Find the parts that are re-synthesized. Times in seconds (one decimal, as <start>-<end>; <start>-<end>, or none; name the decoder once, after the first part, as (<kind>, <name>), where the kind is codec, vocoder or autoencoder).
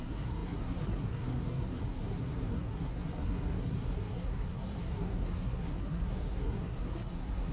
0.0-7.5 (codec, SNAC)